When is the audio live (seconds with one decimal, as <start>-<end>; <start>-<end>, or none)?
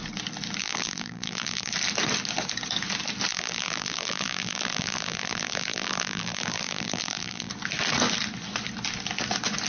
0.0-0.6; 1.7-3.3; 7.5-9.7